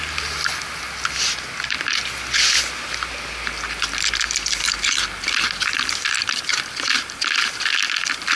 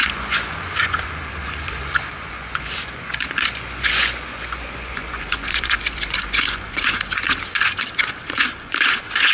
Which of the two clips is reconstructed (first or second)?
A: second